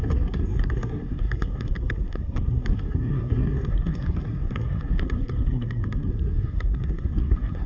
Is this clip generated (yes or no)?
yes